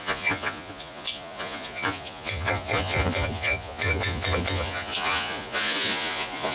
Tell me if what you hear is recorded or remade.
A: remade